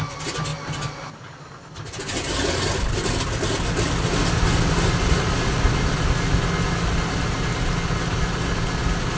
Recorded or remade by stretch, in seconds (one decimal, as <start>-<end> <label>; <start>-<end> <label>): 0.0-9.2 recorded